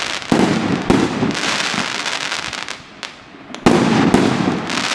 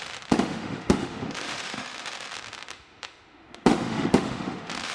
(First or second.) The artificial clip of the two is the second